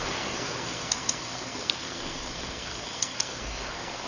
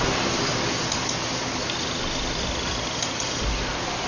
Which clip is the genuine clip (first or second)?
second